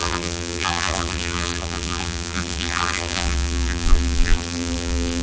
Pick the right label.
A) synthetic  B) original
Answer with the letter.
A